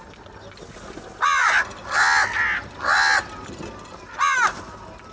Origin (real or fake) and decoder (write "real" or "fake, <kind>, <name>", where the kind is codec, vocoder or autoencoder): real